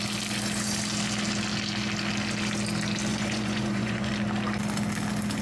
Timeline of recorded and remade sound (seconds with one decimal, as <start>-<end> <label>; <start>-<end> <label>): 0.0-3.1 recorded; 3.1-4.1 remade; 4.1-5.4 recorded